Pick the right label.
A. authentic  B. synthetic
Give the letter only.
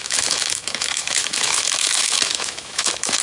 B